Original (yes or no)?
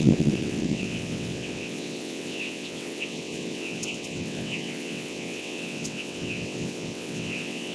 no